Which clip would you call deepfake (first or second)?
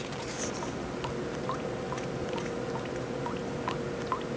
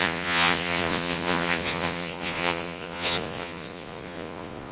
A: second